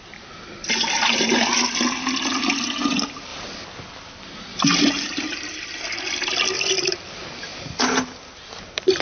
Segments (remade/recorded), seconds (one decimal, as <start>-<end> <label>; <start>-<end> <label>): 0.0-9.0 recorded

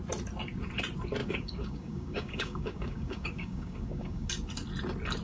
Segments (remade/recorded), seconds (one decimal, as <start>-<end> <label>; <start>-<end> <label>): 0.0-1.2 recorded; 1.2-4.3 remade; 4.3-5.2 recorded

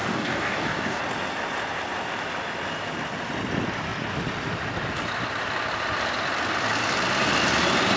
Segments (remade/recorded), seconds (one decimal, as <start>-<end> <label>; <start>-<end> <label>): 0.0-1.0 remade; 1.0-8.0 recorded

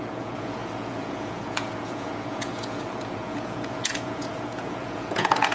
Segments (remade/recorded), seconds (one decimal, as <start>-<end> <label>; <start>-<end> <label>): 0.0-5.5 remade

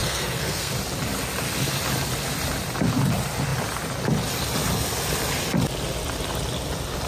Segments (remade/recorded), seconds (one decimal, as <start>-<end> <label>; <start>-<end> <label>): 0.0-0.7 remade; 0.7-7.1 recorded

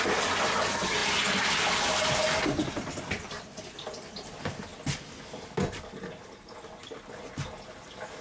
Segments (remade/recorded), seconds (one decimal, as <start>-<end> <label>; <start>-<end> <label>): 0.0-8.2 recorded